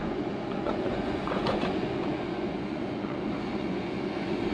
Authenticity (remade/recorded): remade